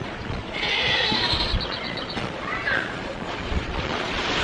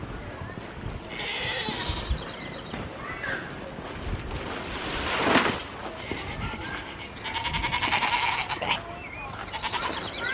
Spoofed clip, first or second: first